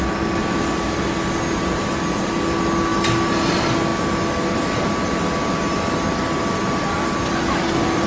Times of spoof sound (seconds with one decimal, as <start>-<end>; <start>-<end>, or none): none